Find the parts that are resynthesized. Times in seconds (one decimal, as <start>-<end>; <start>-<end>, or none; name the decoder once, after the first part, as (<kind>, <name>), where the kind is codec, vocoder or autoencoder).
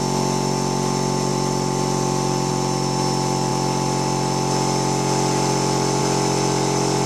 1.3-2.5 (vocoder, BigVGAN v2)